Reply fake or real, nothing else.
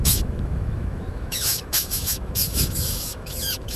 fake